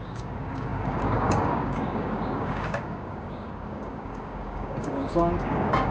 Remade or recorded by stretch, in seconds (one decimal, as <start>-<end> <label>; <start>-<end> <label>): 0.0-5.9 remade